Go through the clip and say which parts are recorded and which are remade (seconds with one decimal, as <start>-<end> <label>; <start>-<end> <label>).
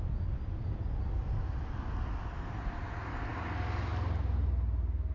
0.0-5.1 recorded